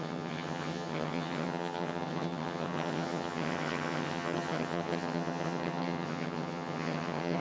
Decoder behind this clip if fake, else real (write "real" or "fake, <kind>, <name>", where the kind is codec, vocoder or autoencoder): fake, vocoder, HiFi-GAN